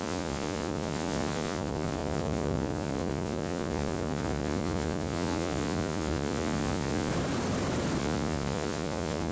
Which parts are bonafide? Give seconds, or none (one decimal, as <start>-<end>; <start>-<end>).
7.1-8.0